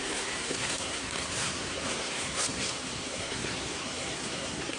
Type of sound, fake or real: fake